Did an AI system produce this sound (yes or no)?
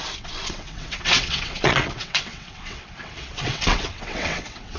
yes